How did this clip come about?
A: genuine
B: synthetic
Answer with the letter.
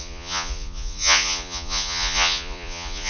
B